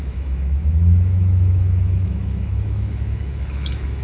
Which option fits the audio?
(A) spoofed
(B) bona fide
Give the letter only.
A